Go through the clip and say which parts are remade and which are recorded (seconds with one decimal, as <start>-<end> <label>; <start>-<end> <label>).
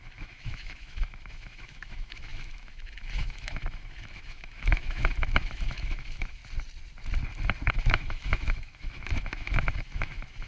0.0-6.4 remade; 6.4-7.7 recorded; 7.7-10.5 remade